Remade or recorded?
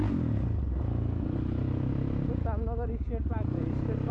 recorded